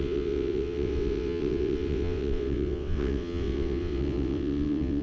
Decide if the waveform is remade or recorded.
remade